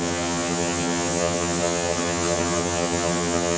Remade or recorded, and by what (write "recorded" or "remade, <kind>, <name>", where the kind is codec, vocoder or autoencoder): remade, vocoder, HiFi-GAN